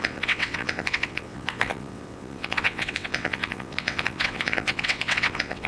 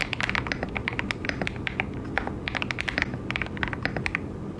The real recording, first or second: second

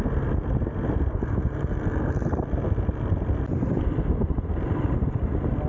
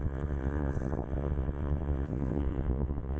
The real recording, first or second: first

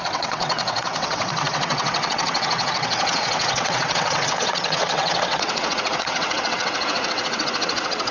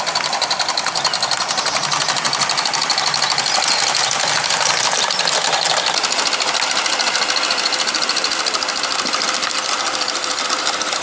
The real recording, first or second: second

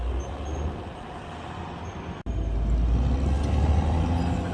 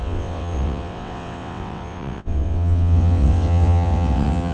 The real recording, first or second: first